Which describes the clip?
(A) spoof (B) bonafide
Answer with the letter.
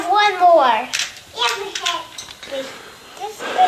B